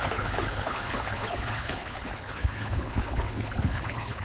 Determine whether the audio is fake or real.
fake